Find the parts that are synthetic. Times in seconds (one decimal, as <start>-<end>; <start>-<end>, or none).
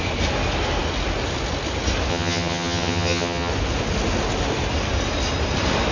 2.1-3.5